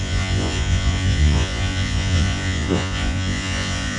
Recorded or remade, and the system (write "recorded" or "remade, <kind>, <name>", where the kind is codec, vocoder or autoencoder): remade, vocoder, Vocos